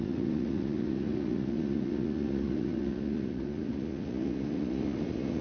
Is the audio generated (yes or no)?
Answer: yes